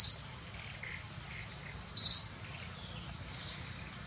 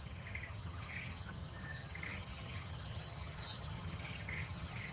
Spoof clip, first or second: second